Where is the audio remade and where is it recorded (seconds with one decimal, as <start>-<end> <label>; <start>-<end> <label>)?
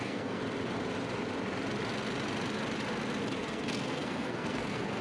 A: 0.0-0.4 remade; 0.4-3.4 recorded; 3.4-5.0 remade